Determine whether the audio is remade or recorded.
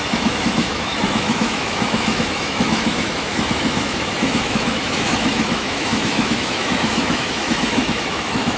remade